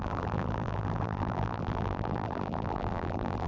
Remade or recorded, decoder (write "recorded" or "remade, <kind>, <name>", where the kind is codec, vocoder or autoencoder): remade, vocoder, BigVGAN v2